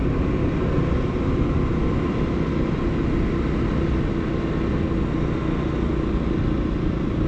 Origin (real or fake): real